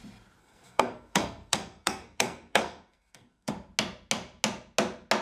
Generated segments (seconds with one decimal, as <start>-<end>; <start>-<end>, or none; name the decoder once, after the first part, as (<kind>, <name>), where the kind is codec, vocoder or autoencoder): 0.4-3.5 (codec, SNAC)